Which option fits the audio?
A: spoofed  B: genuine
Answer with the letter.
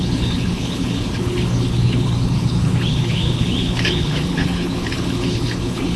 A